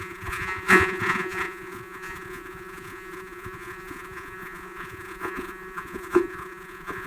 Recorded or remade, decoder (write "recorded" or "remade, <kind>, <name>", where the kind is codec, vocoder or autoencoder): remade, vocoder, Vocos